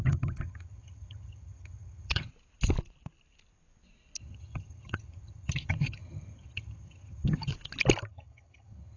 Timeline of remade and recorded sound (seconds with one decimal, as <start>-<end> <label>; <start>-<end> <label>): 0.0-2.3 remade; 2.3-4.2 recorded; 4.2-7.5 remade; 7.5-8.1 recorded; 8.1-9.0 remade